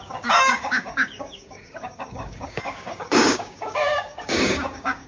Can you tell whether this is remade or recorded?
remade